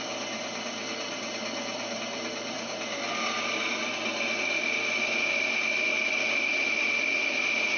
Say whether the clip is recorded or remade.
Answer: recorded